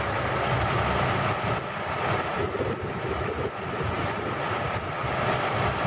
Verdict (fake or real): real